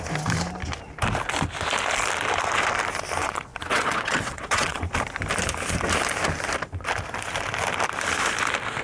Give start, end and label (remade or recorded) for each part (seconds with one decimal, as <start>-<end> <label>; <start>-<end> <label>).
0.0-3.2 recorded; 3.2-4.9 remade; 4.9-8.8 recorded